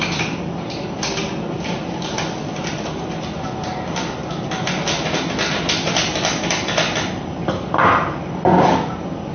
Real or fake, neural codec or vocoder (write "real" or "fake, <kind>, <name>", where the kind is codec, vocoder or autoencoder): real